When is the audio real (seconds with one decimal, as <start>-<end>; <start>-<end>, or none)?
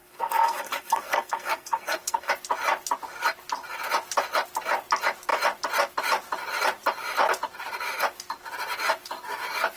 2.3-9.8